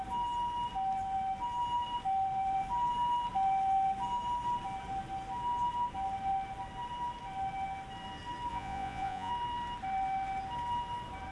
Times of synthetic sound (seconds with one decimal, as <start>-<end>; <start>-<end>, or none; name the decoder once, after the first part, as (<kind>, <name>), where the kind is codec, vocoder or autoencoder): 8.5-9.3 (vocoder, Vocos)